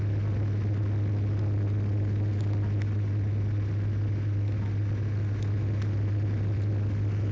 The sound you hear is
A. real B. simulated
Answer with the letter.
A